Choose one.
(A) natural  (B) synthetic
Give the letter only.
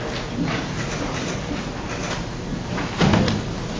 A